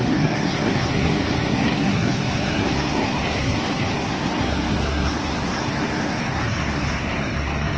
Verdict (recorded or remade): remade